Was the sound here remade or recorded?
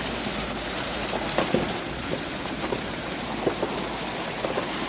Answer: recorded